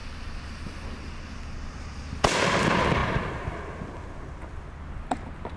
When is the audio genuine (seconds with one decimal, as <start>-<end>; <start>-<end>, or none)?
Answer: 0.0-5.6